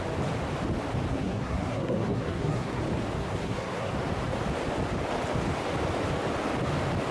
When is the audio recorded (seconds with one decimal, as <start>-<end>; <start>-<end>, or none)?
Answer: 0.0-1.1; 2.8-3.2; 3.9-7.1